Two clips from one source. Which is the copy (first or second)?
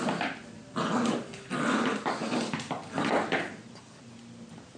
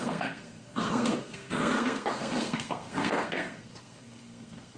second